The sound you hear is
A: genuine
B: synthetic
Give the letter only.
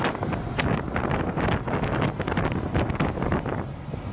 A